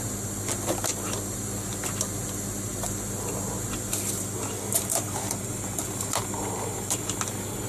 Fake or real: real